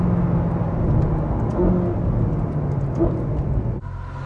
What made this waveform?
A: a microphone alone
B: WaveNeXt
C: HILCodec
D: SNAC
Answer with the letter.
A